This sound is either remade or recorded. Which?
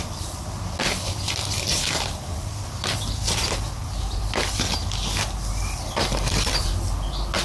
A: recorded